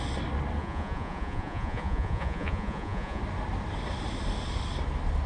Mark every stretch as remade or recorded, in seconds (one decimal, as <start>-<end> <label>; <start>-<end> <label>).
0.0-0.6 recorded; 0.6-3.2 remade; 3.2-5.3 recorded